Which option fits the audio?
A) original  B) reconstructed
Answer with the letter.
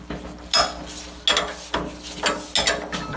A